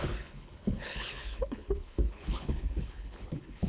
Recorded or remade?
remade